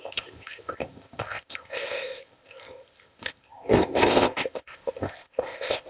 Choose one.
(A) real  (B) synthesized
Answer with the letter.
B